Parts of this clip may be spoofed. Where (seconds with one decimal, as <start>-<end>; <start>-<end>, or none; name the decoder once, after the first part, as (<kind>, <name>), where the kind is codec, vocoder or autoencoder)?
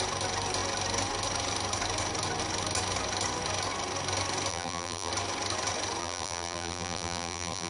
4.5-5.1 (vocoder, BigVGAN v2); 6.0-7.7